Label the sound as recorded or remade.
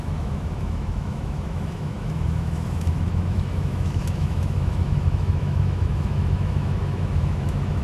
remade